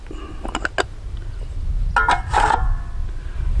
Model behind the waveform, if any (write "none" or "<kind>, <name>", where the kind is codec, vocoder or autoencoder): none